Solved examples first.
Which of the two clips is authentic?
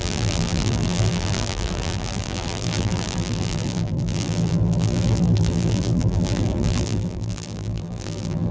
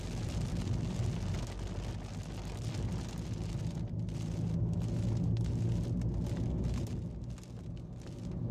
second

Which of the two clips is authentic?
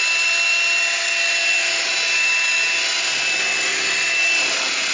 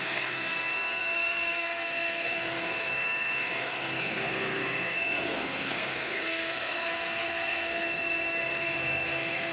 first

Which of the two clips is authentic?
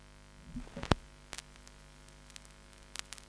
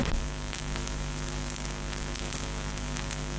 first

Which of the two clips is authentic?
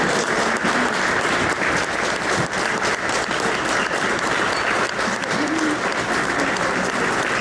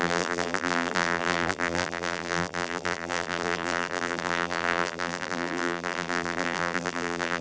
first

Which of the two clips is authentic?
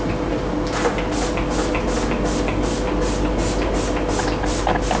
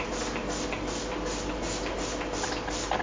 first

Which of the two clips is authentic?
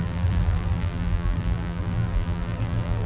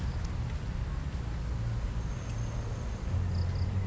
second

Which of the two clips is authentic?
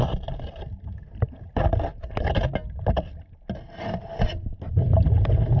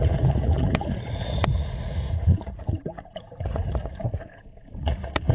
first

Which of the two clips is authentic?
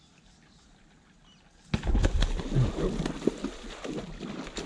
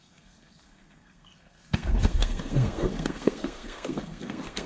first